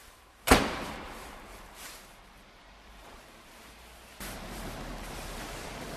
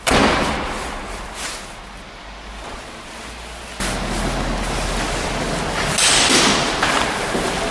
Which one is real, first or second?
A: second